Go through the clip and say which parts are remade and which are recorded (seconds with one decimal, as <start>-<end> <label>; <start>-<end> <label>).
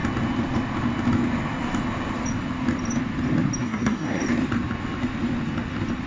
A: 0.0-3.6 recorded; 3.6-4.2 remade; 4.2-6.1 recorded